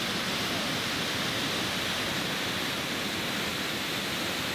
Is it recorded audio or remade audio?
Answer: recorded